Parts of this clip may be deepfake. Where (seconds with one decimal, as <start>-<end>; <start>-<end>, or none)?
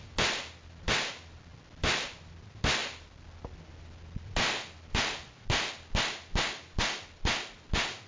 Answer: none